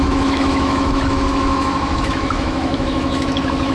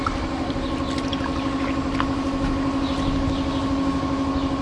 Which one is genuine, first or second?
second